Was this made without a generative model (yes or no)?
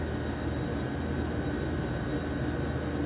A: yes